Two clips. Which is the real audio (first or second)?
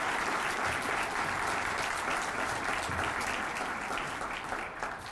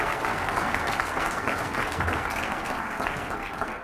first